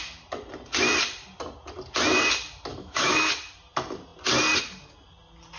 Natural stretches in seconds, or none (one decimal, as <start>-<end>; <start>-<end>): 0.0-2.7; 3.3-5.6